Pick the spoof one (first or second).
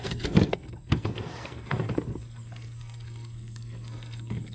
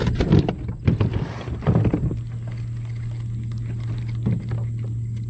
first